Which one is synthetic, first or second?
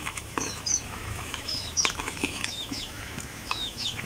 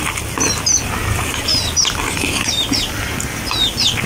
first